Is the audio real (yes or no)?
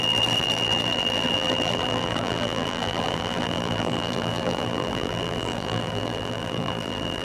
no